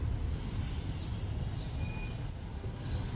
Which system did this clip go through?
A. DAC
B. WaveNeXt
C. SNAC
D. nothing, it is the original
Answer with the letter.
D